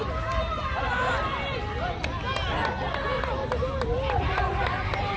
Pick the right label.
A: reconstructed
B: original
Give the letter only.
B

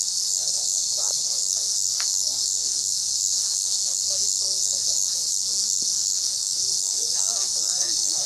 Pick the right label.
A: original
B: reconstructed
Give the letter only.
B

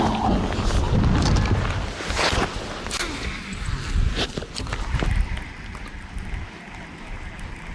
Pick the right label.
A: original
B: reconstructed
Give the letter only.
A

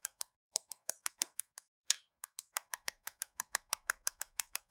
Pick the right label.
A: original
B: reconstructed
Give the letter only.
B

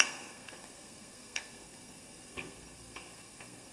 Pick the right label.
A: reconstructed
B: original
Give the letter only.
A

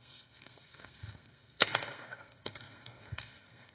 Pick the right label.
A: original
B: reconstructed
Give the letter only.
B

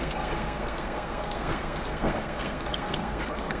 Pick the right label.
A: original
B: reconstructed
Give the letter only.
B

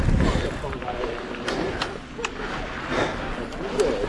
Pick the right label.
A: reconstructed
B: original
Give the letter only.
B